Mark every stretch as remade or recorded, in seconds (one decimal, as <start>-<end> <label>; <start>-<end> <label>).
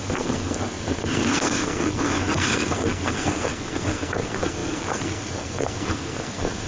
0.0-6.7 remade